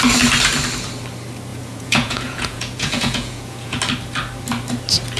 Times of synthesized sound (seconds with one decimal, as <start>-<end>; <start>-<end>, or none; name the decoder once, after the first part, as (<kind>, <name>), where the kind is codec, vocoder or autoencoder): 1.5-3.8 (vocoder, Vocos)